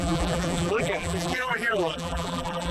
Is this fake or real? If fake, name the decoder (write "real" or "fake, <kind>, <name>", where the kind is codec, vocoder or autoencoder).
fake, vocoder, BigVGAN v2